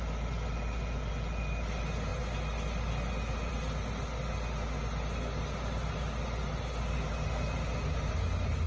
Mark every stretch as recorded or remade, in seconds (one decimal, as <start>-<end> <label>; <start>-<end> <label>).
0.0-8.7 recorded

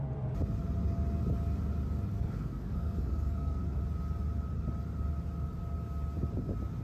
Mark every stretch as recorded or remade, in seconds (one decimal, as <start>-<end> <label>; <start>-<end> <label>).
0.0-2.1 recorded; 2.1-3.8 remade; 3.8-6.8 recorded

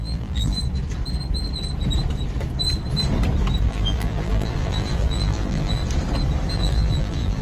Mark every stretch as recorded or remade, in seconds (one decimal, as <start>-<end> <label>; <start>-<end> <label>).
0.0-0.6 remade; 0.6-3.6 recorded; 3.6-5.8 remade; 5.8-6.5 recorded; 6.5-7.4 remade

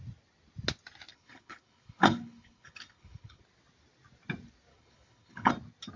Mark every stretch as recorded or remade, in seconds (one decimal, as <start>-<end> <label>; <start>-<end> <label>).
0.0-1.1 recorded; 1.1-3.4 remade; 3.4-4.7 recorded; 4.7-5.5 remade; 5.5-6.0 recorded

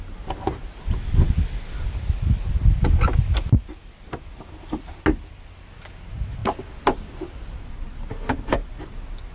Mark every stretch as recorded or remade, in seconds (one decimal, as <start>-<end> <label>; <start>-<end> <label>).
0.0-9.3 recorded

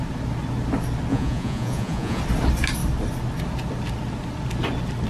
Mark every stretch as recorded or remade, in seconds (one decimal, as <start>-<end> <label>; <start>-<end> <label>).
0.0-1.1 recorded; 1.1-2.2 remade; 2.2-5.1 recorded